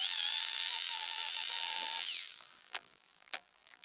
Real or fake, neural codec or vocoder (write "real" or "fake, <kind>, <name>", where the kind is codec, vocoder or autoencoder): fake, vocoder, BigVGAN v2